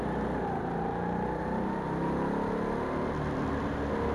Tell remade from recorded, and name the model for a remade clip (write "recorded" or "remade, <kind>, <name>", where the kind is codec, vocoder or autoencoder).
recorded